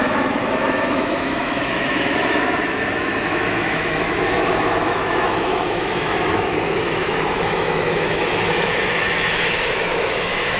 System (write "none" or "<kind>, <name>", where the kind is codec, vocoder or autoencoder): autoencoder, DAC-VAE